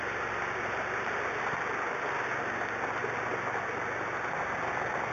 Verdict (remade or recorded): recorded